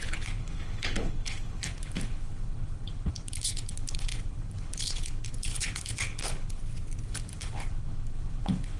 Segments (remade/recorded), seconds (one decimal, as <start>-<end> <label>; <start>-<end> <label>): 0.0-6.6 remade; 6.6-7.1 recorded; 7.1-8.8 remade

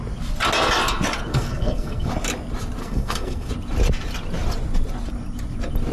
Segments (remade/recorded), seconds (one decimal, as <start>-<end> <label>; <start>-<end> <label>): 0.0-1.3 recorded; 1.3-2.1 remade; 2.1-2.8 recorded; 2.8-3.5 remade; 3.5-5.9 recorded

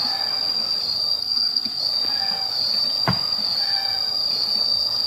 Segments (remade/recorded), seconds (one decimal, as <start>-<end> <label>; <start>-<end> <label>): 0.0-1.2 recorded; 1.2-1.8 remade; 1.8-5.1 recorded

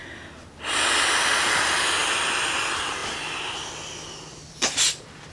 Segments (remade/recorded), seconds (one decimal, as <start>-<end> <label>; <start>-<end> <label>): 0.0-5.3 recorded

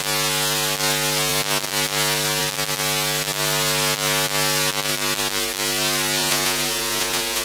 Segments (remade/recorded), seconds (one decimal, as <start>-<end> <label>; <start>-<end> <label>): 0.0-6.2 recorded; 6.2-7.4 remade

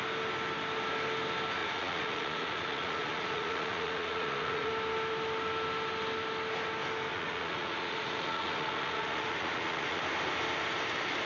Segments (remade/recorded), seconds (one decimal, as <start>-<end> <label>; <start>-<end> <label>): 0.0-1.6 recorded; 1.6-4.7 remade; 4.7-7.1 recorded; 7.1-10.0 remade; 10.0-11.3 recorded

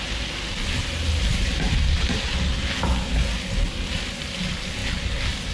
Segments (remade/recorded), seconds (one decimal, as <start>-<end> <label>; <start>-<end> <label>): 0.0-1.3 recorded; 1.3-2.2 remade; 2.2-5.5 recorded

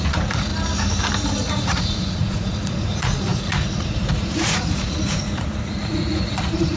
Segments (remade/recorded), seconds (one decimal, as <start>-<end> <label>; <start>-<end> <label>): 0.0-0.5 remade; 0.5-1.5 recorded; 1.5-6.8 remade